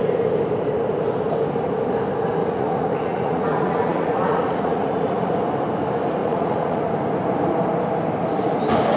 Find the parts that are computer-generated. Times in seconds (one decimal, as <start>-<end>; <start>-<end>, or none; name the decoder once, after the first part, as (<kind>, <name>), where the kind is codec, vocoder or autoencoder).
2.4-5.3 (vocoder, Vocos); 6.2-6.9